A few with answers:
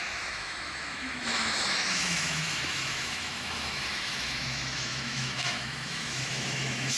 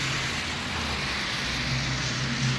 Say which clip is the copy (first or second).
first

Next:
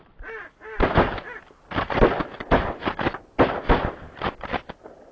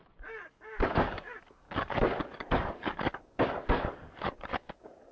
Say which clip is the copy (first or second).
second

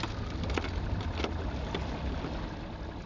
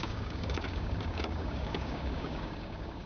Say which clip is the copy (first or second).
second